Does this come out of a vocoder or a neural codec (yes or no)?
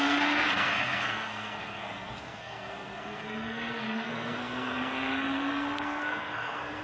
yes